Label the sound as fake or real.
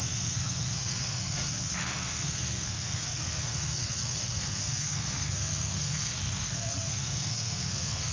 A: fake